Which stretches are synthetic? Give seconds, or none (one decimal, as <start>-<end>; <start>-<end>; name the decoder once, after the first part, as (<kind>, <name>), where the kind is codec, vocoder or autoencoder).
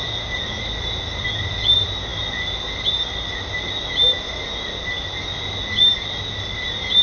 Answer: none